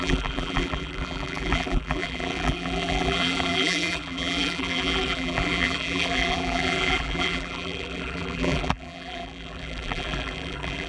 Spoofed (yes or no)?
yes